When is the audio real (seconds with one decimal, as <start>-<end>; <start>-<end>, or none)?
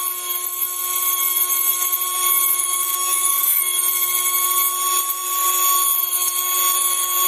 0.0-2.6; 3.6-7.3